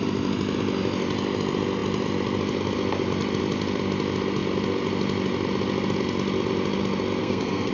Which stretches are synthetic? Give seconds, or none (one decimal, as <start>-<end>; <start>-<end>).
7.2-7.7